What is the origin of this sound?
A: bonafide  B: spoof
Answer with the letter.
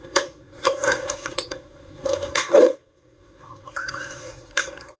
B